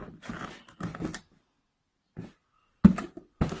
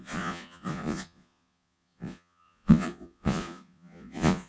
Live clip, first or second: first